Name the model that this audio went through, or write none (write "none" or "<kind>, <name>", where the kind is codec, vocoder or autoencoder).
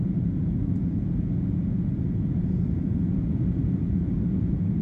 vocoder, Vocos